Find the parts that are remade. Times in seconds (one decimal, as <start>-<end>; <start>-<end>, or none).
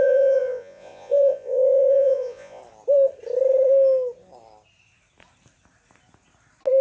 0.0-2.6